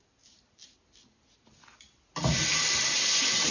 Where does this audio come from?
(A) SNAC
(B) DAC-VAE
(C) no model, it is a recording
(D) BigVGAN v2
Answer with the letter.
C